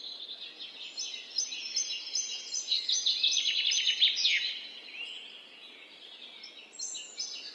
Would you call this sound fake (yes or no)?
no